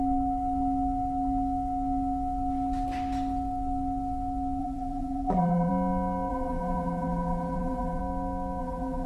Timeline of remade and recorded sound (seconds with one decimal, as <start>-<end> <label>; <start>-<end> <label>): 0.0-4.6 recorded; 4.6-5.7 remade; 5.7-6.3 recorded; 6.3-8.0 remade; 8.0-8.6 recorded; 8.6-9.1 remade